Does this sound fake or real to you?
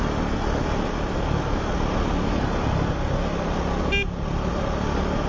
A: real